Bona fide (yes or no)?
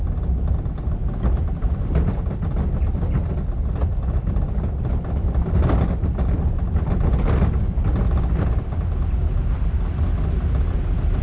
yes